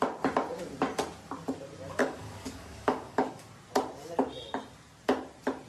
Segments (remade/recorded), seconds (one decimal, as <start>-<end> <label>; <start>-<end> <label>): 0.0-2.0 recorded; 2.0-3.5 remade; 3.5-5.7 recorded